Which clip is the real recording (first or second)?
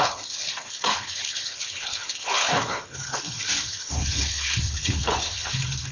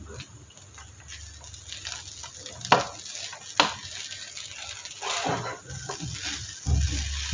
second